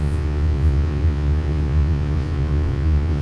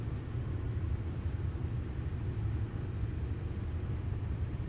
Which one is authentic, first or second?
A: second